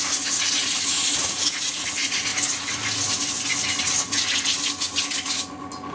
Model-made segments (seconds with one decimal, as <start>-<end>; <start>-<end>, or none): 0.0-2.3